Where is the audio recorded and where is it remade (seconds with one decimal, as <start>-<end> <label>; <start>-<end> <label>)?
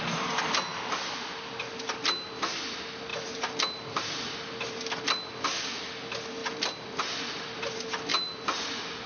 0.0-0.7 recorded; 0.7-1.7 remade; 1.7-6.4 recorded; 6.4-7.6 remade; 7.6-8.1 recorded; 8.1-9.1 remade